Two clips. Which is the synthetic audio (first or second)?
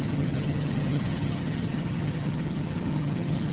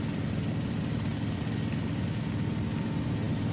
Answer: first